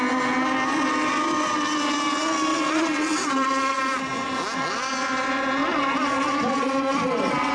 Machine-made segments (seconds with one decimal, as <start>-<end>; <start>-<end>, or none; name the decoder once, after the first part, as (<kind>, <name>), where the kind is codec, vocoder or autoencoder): 2.5-3.8 (vocoder, WaveNeXt); 5.6-7.5